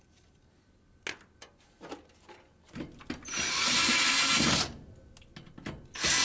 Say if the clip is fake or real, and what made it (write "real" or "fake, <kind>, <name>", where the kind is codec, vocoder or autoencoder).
real